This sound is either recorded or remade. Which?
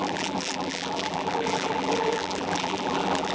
remade